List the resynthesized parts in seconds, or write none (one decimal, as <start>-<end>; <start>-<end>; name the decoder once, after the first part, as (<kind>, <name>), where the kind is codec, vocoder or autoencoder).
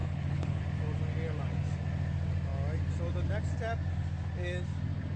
0.0-0.6 (codec, HILCodec)